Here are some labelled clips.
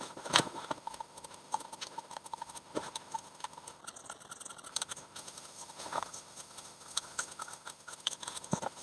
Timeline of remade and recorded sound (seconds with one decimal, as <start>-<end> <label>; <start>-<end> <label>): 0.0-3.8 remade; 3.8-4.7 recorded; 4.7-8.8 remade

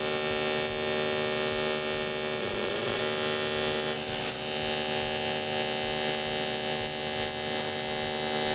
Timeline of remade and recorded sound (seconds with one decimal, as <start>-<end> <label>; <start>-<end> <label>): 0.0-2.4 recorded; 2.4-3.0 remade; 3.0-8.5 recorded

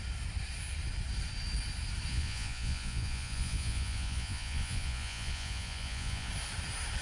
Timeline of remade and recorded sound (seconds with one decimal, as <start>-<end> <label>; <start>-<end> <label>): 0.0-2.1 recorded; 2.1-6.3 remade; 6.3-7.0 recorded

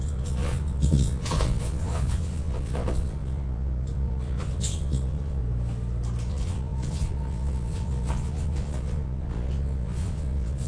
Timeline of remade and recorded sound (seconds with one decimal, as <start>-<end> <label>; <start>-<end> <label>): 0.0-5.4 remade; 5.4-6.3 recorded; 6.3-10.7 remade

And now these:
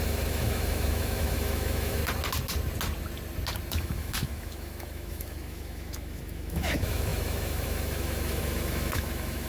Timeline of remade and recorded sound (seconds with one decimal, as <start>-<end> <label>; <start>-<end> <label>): 0.0-2.0 remade; 2.0-3.7 recorded; 3.7-9.5 remade

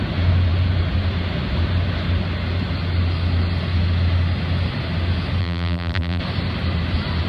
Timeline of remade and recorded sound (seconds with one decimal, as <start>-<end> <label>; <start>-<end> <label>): 0.0-5.4 recorded; 5.4-6.2 remade; 6.2-7.3 recorded

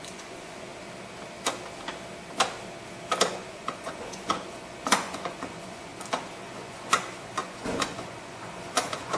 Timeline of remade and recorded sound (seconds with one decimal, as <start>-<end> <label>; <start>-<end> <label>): 0.0-0.7 remade; 0.7-3.3 recorded; 3.3-5.9 remade; 5.9-6.4 recorded; 6.4-9.2 remade

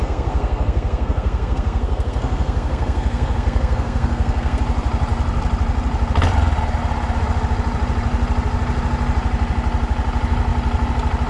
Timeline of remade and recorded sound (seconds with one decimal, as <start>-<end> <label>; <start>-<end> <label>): 0.0-4.6 remade; 4.6-11.3 recorded